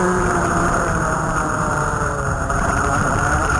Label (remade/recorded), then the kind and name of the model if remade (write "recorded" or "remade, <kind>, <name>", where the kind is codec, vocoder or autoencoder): remade, vocoder, BigVGAN v2